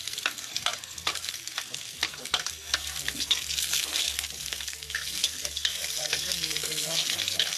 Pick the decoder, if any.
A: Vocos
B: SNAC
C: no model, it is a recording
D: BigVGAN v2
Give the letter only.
B